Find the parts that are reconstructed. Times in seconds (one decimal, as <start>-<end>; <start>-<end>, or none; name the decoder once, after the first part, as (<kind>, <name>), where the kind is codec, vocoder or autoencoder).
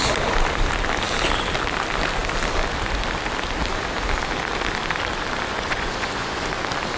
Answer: 5.5-6.5 (vocoder, Vocos)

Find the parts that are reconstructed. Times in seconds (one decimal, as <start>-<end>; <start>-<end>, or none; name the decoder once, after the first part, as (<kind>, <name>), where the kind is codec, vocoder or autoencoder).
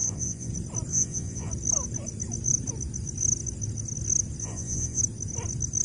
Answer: 0.0-0.5 (vocoder, Vocos); 0.9-1.5; 4.4-5.0